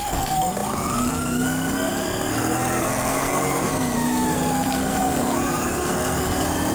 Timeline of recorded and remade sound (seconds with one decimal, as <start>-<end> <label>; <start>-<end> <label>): 0.0-6.7 remade